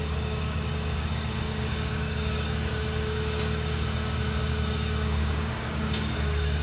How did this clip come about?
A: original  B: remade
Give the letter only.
B